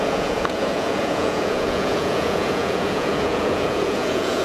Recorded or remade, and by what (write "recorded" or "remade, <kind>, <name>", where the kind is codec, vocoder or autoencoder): remade, vocoder, Vocos